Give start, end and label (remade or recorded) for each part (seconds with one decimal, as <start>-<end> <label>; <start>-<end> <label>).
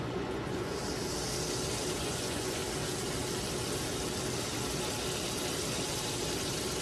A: 0.0-0.8 remade; 0.8-2.0 recorded; 2.0-2.6 remade; 2.6-6.8 recorded